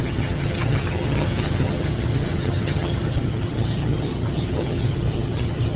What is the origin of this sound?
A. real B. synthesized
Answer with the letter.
B